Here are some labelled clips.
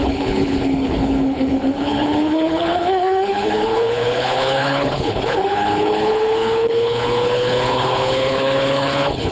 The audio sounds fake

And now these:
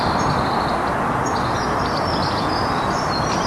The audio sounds fake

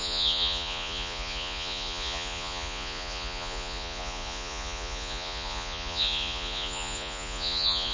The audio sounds fake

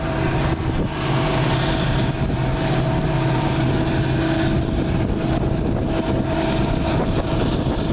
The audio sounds real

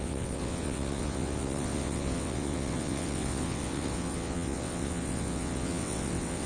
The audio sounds fake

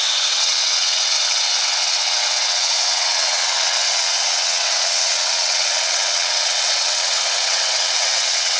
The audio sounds fake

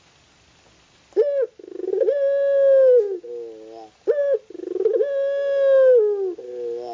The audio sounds real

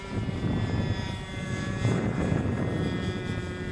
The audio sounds real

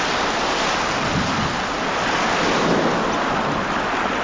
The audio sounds real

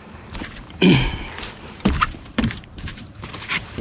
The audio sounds fake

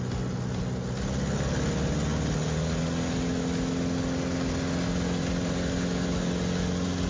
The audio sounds real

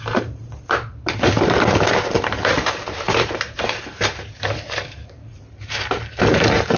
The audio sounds fake